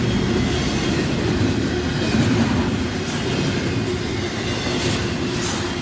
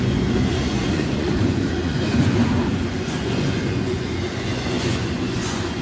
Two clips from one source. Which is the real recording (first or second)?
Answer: first